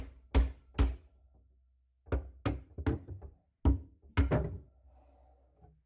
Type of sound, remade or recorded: recorded